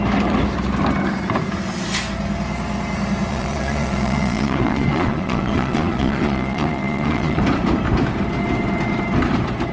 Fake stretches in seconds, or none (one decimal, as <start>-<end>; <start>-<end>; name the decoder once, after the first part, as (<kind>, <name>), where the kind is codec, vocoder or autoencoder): 3.3-7.4 (vocoder, Vocos)